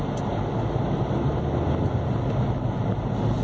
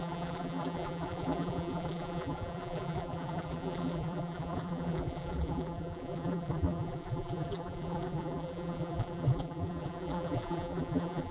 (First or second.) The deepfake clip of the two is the second